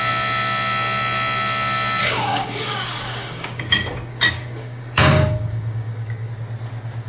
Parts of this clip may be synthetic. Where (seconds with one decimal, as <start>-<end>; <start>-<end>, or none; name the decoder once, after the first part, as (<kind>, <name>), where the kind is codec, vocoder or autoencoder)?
2.0-6.3 (codec, DAC)